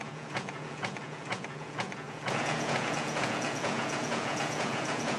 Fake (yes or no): yes